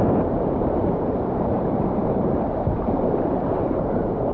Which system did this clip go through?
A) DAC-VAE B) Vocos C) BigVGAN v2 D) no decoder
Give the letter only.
C